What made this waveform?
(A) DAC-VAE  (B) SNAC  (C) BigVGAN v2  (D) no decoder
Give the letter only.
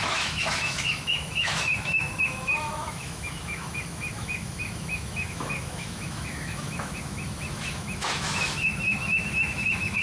A